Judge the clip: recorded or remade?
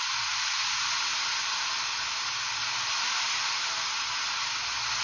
recorded